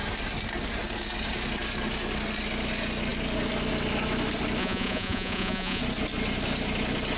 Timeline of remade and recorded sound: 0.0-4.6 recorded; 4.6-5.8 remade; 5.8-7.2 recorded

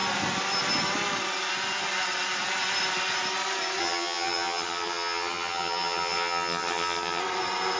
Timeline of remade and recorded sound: 0.0-3.8 recorded; 3.8-7.2 remade; 7.2-7.8 recorded

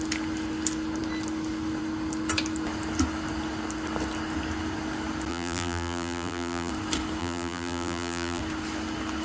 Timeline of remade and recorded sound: 0.0-5.3 recorded; 5.3-6.7 remade; 6.7-7.2 recorded; 7.2-8.4 remade; 8.4-9.2 recorded